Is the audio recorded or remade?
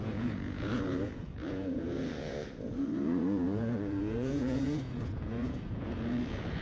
remade